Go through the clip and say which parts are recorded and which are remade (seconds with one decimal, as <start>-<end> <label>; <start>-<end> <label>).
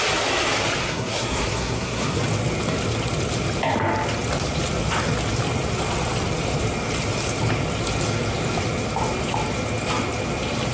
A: 0.0-0.8 recorded; 0.8-2.2 remade; 2.2-10.7 recorded